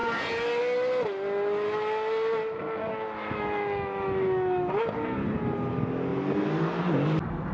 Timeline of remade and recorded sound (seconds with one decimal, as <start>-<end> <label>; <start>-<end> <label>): 0.0-2.8 recorded; 2.8-4.7 remade; 4.7-7.5 recorded